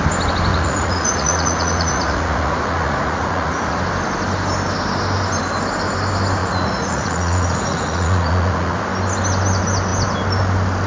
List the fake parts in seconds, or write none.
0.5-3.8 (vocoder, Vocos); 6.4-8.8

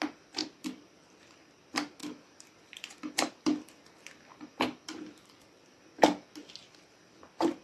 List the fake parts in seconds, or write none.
0.4-1.2 (vocoder, BigVGAN v2); 2.0-6.3; 7.0-7.6

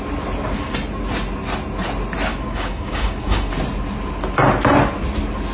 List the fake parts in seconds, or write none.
2.3-3.5 (codec, DAC)

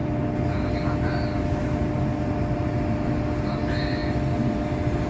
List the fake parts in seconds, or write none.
none

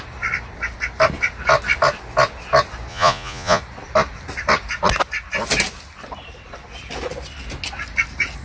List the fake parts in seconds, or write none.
2.9-3.6 (vocoder, Vocos)